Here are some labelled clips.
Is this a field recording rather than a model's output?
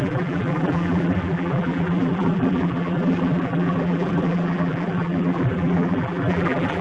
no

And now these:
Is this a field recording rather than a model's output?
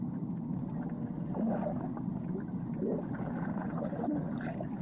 yes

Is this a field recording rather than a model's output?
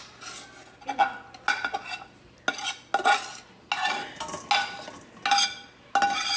yes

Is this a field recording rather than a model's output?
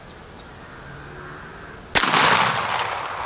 yes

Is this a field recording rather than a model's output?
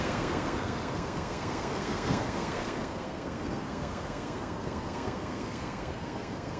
no